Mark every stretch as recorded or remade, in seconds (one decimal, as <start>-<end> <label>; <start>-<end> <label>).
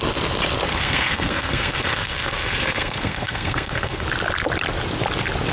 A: 0.0-0.7 recorded; 0.7-4.0 remade; 4.0-5.5 recorded